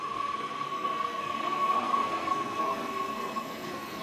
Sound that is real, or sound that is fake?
fake